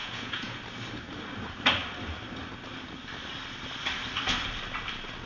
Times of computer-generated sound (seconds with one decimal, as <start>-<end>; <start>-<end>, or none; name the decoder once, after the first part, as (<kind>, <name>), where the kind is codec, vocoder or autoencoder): 0.0-0.6 (vocoder, Vocos)